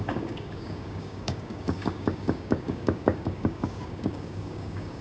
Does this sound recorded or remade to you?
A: remade